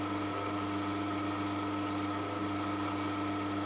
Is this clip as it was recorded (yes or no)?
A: yes